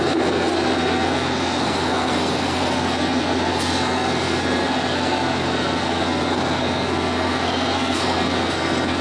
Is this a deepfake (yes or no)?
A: yes